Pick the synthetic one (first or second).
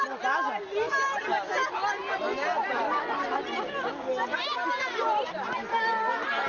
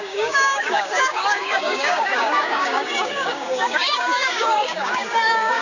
second